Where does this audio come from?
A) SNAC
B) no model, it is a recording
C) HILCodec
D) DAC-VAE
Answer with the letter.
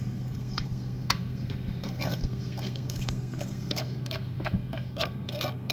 A